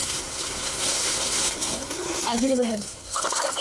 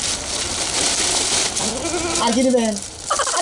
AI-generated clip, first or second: first